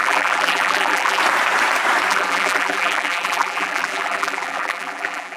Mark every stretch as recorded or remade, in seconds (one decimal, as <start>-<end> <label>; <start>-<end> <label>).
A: 0.0-1.2 remade; 1.2-2.1 recorded; 2.1-5.4 remade